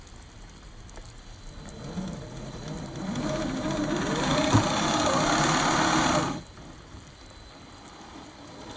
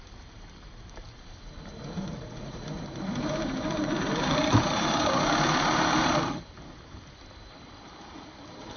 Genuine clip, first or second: first